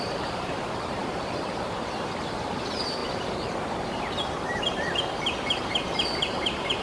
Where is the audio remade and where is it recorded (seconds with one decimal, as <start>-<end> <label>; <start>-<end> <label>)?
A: 0.0-3.0 remade; 3.0-3.8 recorded; 3.8-6.8 remade